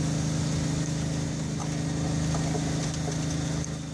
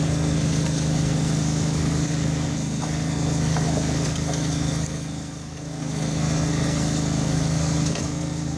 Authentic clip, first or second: first